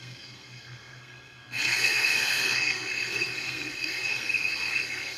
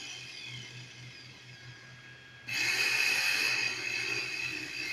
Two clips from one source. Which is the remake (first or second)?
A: first